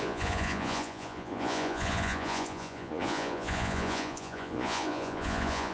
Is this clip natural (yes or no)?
no